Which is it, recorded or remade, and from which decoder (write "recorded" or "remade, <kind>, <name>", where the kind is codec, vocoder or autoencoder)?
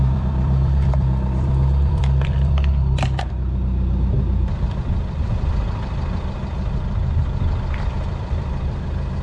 remade, vocoder, BigVGAN v2